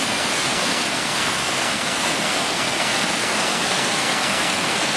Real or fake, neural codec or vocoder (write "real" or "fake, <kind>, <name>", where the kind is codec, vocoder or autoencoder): fake, codec, SNAC